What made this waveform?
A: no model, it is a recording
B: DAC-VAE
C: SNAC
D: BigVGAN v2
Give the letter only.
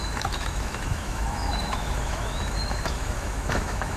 B